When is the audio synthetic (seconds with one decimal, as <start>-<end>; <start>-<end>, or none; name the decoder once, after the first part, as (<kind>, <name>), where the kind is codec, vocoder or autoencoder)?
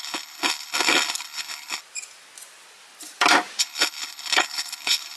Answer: 0.0-1.8 (codec, HILCodec); 3.6-5.2